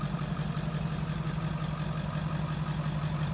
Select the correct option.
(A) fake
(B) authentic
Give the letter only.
B